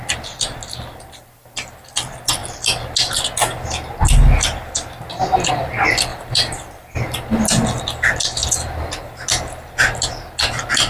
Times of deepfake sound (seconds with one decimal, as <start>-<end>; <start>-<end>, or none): 6.1-6.6